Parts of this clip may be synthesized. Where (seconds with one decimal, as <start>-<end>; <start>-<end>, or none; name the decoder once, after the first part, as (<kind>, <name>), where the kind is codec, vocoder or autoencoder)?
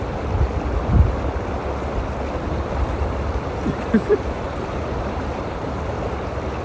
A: 4.1-5.8 (vocoder, BigVGAN v2)